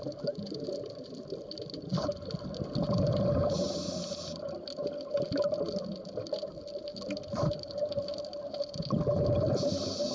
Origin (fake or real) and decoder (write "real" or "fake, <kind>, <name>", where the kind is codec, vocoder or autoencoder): real